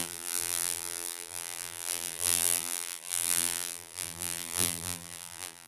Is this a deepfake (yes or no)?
yes